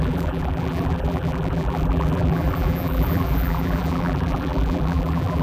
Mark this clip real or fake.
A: fake